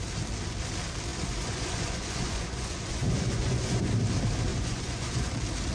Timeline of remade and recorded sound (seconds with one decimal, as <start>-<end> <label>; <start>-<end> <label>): 0.0-1.1 recorded; 1.1-3.9 remade; 3.9-4.5 recorded; 4.5-5.3 remade; 5.3-5.7 recorded